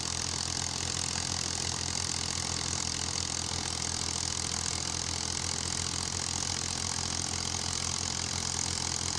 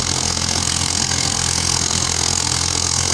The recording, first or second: first